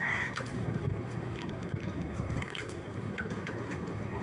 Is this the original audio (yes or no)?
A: no